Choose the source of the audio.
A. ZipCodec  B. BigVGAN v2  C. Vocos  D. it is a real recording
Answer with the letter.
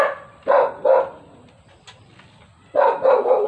D